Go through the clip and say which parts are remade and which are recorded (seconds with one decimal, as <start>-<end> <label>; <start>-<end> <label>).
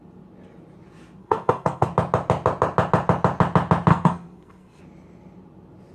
0.0-1.2 recorded; 1.2-1.9 remade; 1.9-3.9 recorded; 3.9-4.8 remade; 4.8-5.9 recorded